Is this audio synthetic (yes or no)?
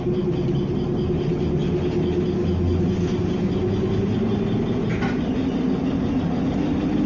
no